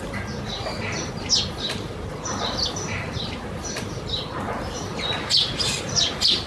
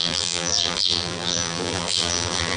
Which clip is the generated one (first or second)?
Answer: second